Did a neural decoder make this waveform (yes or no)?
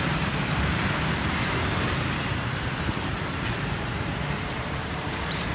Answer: yes